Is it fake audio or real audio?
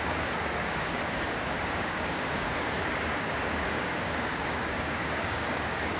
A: fake